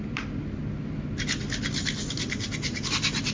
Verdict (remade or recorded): recorded